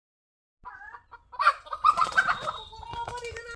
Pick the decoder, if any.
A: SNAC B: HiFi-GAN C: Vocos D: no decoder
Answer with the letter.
D